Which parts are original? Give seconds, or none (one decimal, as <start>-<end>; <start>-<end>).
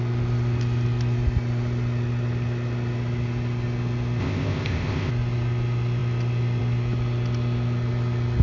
0.0-4.2; 5.1-8.4